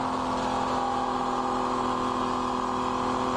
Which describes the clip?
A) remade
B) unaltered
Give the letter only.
B